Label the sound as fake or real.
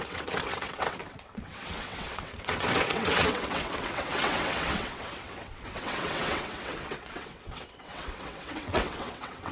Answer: fake